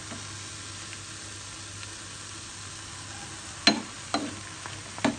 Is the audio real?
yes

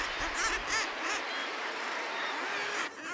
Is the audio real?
yes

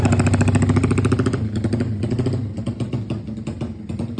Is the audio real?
yes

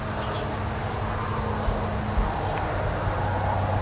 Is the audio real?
yes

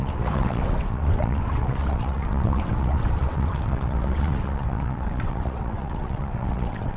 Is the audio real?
no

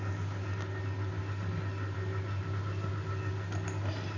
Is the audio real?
yes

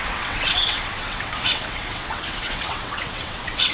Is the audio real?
no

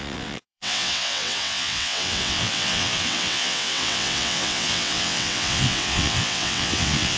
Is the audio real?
no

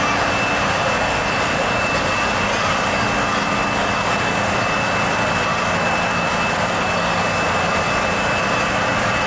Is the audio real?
yes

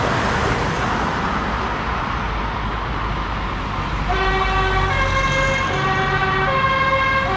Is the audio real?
yes